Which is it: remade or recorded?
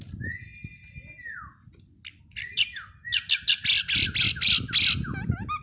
recorded